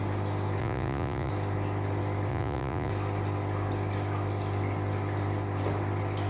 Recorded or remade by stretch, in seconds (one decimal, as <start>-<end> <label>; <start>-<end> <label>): 0.0-0.6 recorded; 0.6-1.3 remade; 1.3-2.3 recorded; 2.3-2.9 remade; 2.9-6.3 recorded